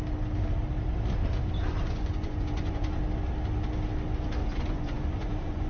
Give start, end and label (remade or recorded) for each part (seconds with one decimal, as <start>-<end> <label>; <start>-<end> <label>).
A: 0.0-1.7 recorded; 1.7-3.0 remade; 3.0-4.4 recorded; 4.4-5.7 remade